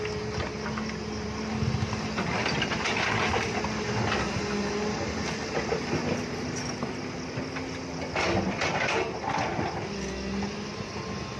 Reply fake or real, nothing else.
real